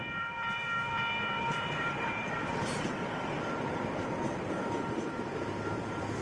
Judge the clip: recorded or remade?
remade